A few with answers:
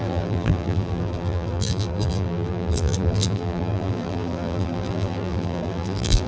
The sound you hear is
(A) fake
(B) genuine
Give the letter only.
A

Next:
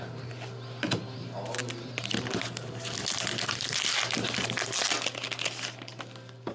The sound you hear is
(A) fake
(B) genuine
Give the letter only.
B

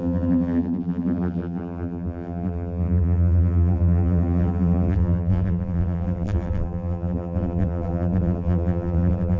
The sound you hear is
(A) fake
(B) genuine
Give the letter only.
A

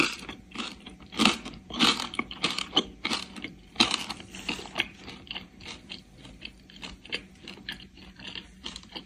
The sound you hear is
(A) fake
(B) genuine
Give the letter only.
A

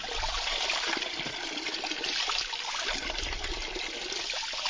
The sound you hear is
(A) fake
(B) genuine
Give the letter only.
B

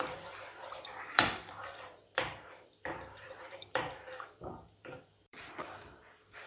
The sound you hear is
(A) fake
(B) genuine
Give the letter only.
A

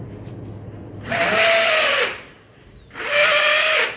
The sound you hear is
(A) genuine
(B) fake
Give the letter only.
A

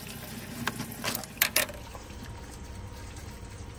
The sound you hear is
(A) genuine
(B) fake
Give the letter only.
A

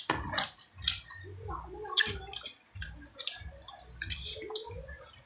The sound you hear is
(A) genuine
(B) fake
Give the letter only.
A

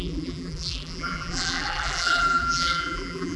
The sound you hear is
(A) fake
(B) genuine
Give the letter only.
A